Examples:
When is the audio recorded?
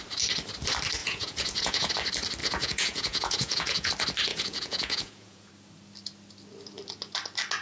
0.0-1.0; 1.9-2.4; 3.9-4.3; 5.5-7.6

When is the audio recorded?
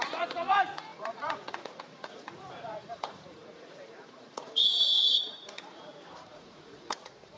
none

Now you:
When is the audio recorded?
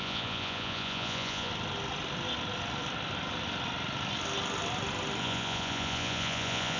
1.5-5.2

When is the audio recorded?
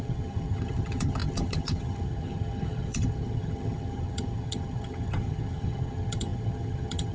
none